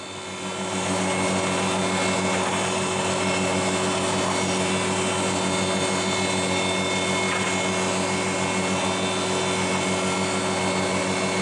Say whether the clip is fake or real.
real